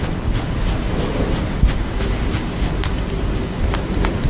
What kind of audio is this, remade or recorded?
recorded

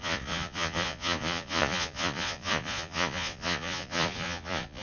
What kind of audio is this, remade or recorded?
remade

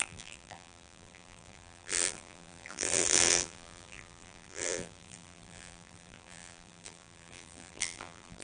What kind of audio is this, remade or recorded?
remade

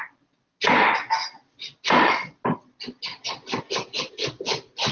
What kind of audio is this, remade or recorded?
recorded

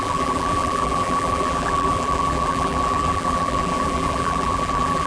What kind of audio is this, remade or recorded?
remade